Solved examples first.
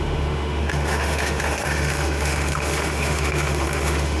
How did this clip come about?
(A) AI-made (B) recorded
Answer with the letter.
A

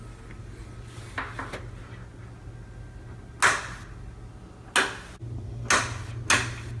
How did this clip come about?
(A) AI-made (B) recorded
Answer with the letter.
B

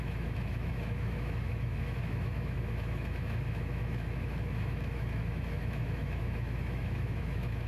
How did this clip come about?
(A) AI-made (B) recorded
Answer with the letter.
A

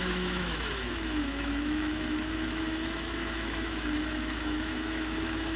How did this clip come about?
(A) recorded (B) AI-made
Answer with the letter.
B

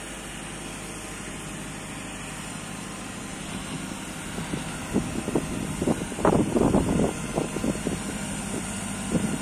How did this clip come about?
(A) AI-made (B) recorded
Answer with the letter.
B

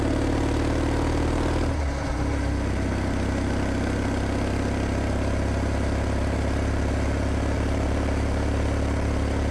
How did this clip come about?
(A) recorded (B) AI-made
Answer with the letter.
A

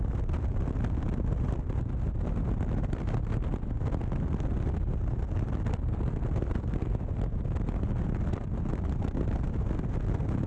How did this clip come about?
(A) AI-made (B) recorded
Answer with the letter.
B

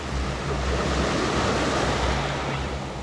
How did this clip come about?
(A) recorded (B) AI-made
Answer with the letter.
A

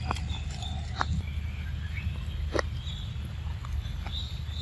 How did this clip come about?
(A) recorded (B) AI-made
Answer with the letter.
A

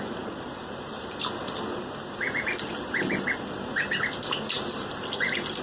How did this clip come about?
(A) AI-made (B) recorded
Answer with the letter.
B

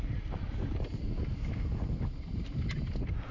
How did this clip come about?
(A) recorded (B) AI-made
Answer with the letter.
A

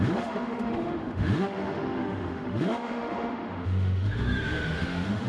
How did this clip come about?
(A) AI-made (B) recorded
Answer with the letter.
A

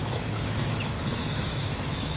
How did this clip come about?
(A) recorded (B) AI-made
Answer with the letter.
B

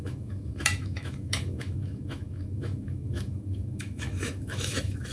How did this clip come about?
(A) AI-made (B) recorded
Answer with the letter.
A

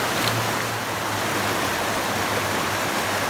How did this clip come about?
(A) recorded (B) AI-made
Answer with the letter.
A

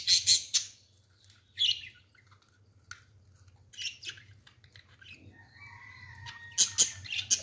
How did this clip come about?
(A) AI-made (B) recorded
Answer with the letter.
B